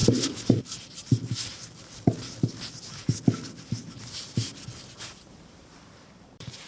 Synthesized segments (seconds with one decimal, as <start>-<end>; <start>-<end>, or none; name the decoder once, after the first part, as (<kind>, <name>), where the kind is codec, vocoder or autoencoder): 4.0-4.5 (vocoder, BigVGAN v2); 5.3-6.7